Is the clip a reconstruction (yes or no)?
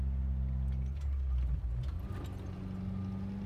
no